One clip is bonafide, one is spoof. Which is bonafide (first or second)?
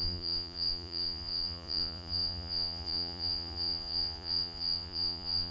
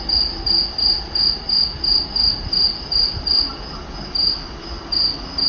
second